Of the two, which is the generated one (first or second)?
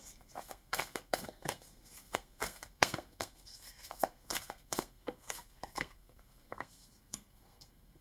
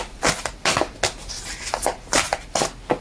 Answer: first